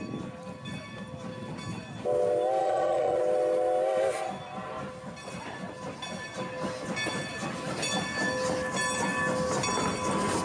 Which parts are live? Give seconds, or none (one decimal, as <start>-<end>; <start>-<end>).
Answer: 0.0-2.6; 3.2-10.4